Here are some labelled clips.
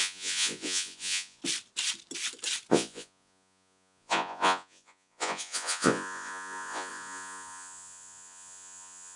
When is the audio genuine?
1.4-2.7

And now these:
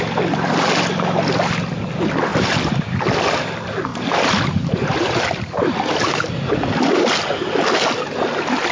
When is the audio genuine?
0.0-8.7

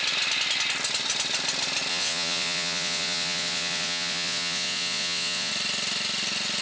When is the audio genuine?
0.0-1.9; 5.5-6.6

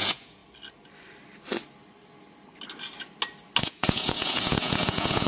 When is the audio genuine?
0.4-3.6